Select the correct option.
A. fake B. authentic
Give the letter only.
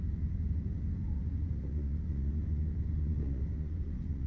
A